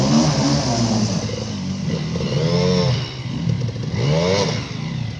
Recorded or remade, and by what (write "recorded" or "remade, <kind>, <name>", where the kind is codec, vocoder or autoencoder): recorded